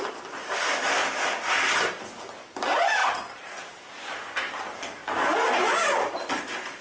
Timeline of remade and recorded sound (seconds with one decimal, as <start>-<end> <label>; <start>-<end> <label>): 0.0-6.8 recorded